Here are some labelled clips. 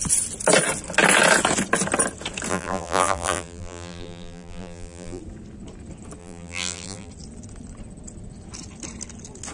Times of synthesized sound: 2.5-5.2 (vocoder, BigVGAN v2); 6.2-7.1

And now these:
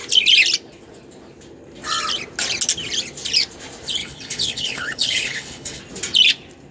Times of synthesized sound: 4.0-5.8 (codec, HILCodec)

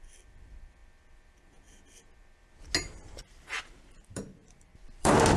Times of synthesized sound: 0.0-0.8 (vocoder, BigVGAN v2); 3.6-5.4

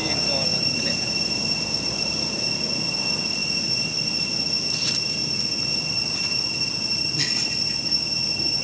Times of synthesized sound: none

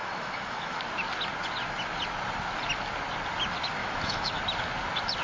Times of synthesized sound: 0.0-0.8 (autoencoder, DAC-VAE); 3.8-4.4

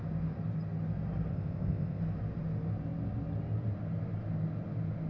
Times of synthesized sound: 1.3-2.0 (codec, ZipCodec)

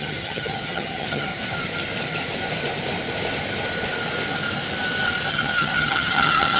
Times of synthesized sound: 0.0-1.3 (vocoder, HiFi-GAN); 5.3-6.6

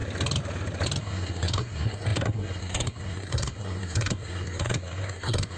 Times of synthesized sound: 1.0-5.6 (codec, SNAC)